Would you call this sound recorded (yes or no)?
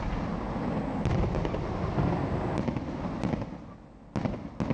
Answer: yes